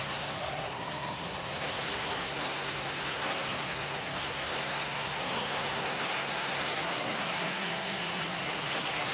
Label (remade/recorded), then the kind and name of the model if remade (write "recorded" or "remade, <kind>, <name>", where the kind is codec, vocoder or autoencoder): remade, codec, SNAC